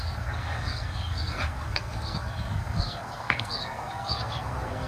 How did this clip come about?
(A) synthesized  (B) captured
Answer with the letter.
A